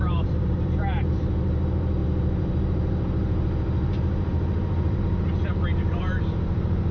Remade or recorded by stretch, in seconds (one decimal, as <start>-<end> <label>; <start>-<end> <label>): 0.0-6.9 remade